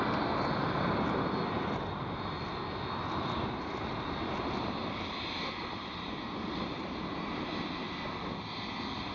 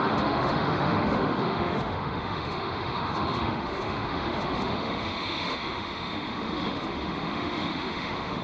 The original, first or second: first